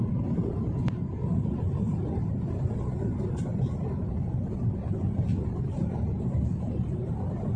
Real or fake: real